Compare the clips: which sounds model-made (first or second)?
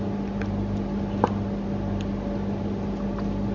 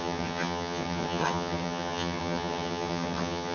second